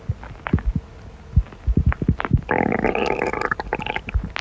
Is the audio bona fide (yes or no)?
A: yes